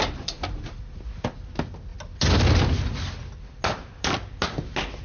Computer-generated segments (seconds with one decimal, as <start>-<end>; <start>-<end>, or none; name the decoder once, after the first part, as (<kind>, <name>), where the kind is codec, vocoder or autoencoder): none